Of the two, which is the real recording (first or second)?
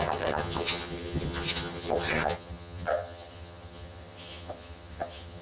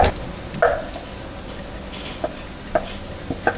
second